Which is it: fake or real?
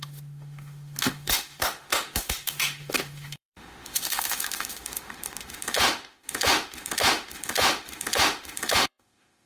fake